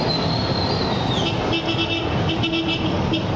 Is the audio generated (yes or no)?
no